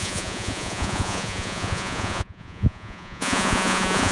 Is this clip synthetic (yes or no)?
yes